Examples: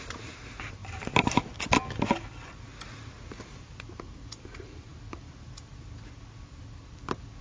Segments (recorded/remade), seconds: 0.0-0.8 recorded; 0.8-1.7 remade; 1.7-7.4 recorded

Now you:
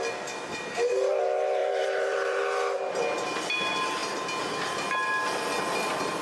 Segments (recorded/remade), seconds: 0.0-1.6 recorded; 1.6-2.4 remade; 2.4-6.2 recorded

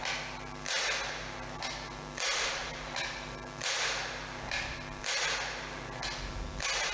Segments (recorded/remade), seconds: 0.0-6.9 recorded

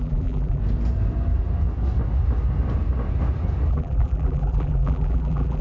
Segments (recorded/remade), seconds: 0.0-0.6 remade; 0.6-3.7 recorded; 3.7-5.6 remade